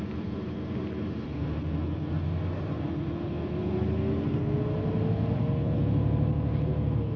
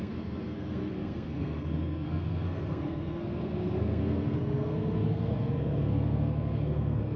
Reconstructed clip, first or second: second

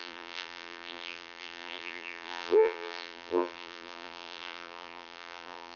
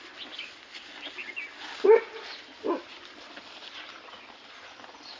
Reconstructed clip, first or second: first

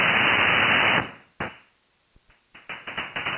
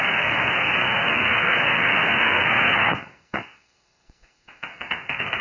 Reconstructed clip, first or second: second